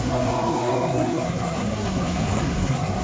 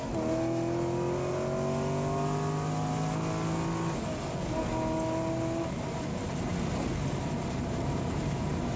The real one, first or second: second